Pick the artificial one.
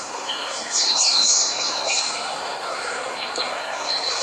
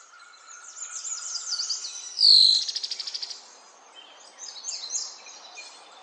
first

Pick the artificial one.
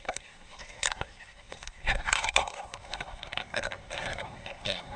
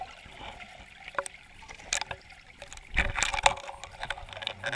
first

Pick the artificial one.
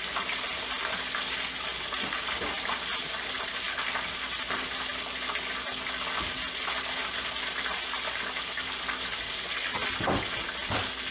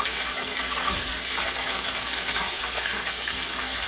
second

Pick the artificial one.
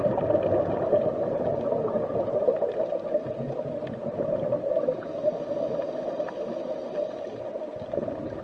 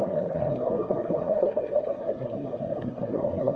second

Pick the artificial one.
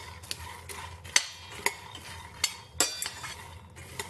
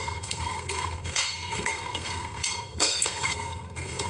second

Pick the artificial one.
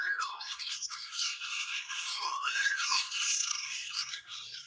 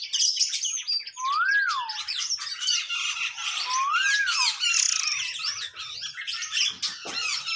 first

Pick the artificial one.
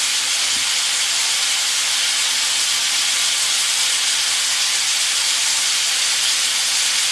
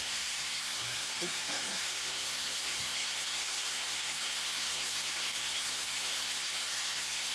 second